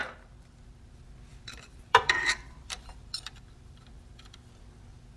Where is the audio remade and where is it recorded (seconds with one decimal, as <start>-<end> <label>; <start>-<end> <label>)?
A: 0.0-0.9 remade; 0.9-1.3 recorded; 1.3-4.4 remade; 4.4-5.2 recorded